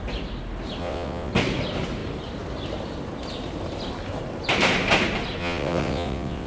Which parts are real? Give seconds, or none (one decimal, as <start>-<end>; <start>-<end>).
0.0-0.8; 1.3-5.4